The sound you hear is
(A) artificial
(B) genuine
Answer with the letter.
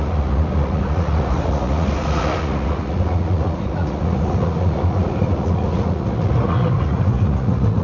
A